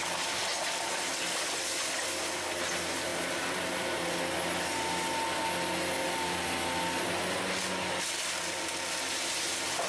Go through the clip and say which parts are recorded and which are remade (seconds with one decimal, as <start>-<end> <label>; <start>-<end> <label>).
0.0-3.1 recorded; 3.1-4.2 remade; 4.2-9.9 recorded